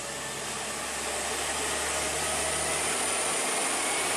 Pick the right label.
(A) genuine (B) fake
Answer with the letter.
A